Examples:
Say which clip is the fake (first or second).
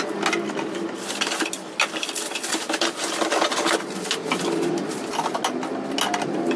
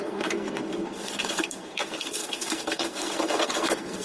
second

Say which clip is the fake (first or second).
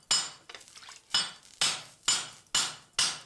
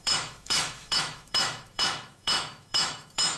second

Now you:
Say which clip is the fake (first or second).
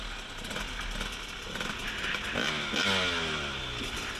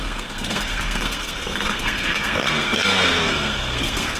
second